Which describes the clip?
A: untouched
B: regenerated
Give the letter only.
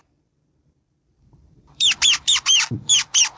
B